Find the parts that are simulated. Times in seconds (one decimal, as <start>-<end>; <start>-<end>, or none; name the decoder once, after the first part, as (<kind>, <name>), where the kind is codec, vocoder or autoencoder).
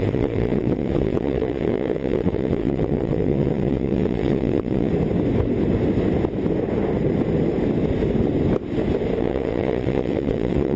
0.0-4.9 (vocoder, WaveNeXt); 9.2-10.8